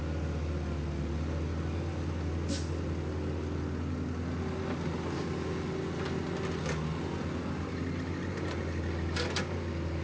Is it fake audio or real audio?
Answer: real